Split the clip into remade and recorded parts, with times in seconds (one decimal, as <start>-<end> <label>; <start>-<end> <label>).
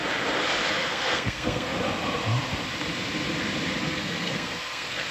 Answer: 0.0-0.7 recorded; 0.7-1.7 remade; 1.7-3.8 recorded; 3.8-5.1 remade